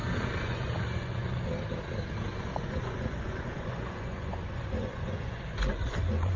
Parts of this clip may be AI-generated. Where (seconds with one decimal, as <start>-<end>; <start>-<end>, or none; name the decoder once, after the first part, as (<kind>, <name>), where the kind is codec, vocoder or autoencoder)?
0.0-1.5 (vocoder, Vocos); 2.3-6.4